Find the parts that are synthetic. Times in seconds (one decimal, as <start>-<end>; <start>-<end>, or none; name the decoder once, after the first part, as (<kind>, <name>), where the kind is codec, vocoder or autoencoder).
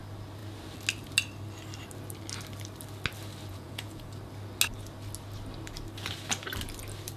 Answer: 3.5-4.2 (vocoder, Vocos)